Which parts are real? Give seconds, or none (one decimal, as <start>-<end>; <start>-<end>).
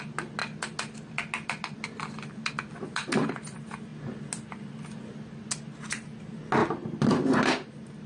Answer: 0.0-8.1